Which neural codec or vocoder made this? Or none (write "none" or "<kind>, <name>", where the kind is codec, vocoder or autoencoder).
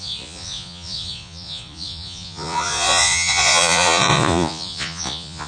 vocoder, Vocos